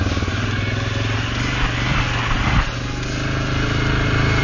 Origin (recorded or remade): recorded